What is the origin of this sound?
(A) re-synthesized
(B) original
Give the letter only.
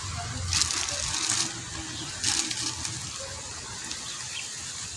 B